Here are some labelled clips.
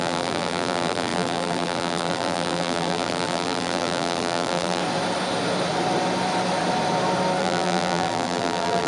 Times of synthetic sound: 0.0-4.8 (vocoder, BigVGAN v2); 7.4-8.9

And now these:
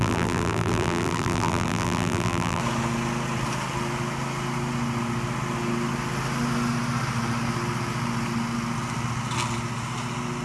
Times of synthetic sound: 0.0-2.6 (vocoder, BigVGAN v2)